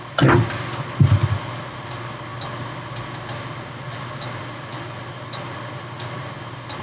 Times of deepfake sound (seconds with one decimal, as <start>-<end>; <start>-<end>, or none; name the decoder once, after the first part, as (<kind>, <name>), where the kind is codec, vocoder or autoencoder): none